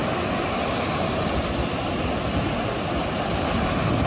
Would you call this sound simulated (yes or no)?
no